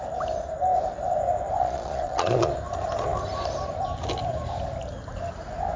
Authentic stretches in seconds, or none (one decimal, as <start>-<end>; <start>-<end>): 0.0-1.6; 2.5-5.8